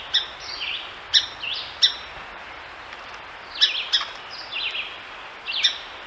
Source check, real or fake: real